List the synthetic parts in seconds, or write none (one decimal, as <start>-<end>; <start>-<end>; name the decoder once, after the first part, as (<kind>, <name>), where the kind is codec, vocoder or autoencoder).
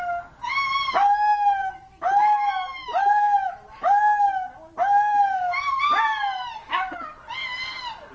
1.0-3.9 (autoencoder, DAC-VAE); 5.1-5.8